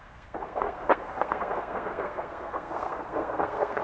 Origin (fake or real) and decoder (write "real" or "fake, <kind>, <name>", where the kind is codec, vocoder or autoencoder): fake, codec, SNAC